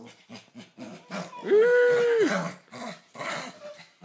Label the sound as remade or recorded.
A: recorded